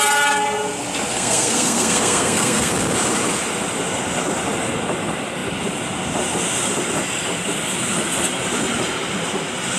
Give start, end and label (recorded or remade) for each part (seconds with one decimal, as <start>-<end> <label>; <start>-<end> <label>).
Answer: 0.0-1.1 recorded; 1.1-2.7 remade; 2.7-9.8 recorded